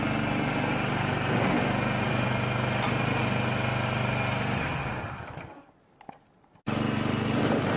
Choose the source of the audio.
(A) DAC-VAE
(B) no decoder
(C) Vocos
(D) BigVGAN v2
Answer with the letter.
B